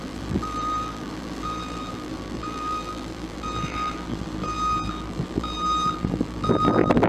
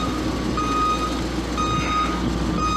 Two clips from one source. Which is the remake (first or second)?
first